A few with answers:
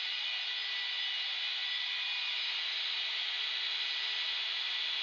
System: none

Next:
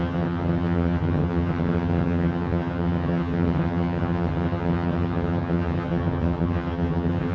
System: vocoder, HiFi-GAN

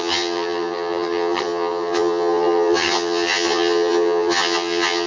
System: vocoder, HiFi-GAN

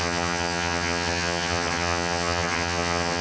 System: vocoder, HiFi-GAN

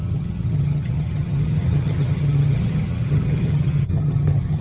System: vocoder, HiFi-GAN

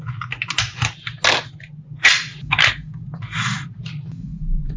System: none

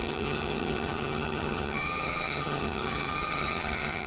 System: vocoder, HiFi-GAN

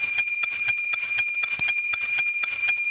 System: vocoder, HiFi-GAN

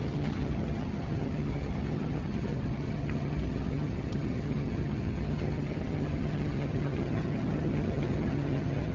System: vocoder, HiFi-GAN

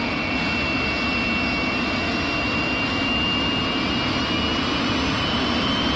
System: none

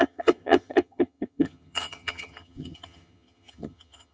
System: vocoder, HiFi-GAN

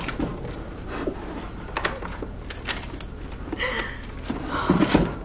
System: none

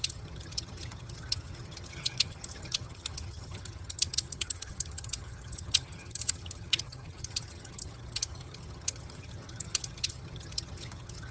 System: vocoder, HiFi-GAN